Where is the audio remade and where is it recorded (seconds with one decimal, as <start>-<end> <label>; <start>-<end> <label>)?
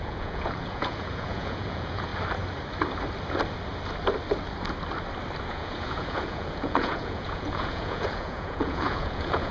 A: 0.0-2.1 remade; 2.1-5.4 recorded; 5.4-9.5 remade